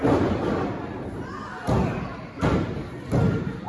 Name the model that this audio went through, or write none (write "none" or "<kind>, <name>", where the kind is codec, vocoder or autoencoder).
none